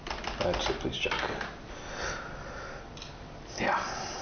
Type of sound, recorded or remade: recorded